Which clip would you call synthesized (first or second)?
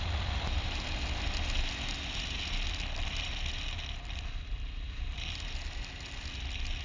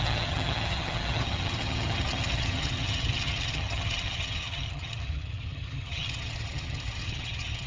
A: second